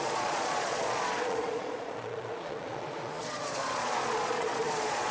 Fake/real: fake